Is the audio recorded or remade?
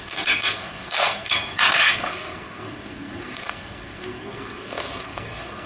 remade